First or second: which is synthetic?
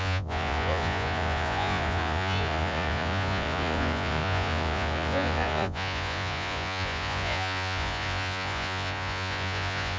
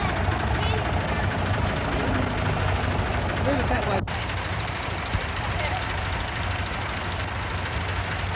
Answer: first